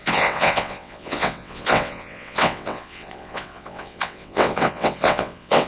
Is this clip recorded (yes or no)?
no